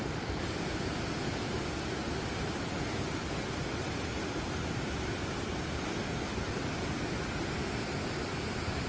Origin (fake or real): real